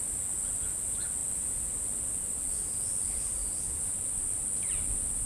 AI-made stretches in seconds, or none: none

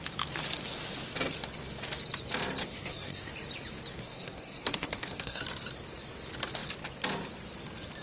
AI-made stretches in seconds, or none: 2.6-3.3; 4.0-5.4

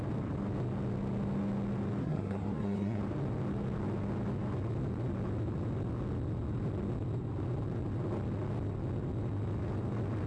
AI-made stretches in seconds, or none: 2.0-3.0

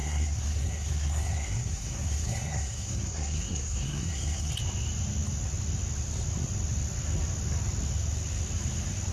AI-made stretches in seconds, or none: 0.0-4.5

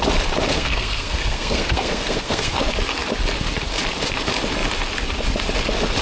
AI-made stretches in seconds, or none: 0.5-2.6

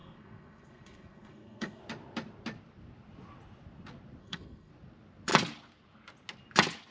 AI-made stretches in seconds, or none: 0.0-1.8; 4.2-4.7